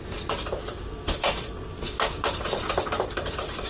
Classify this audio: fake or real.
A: real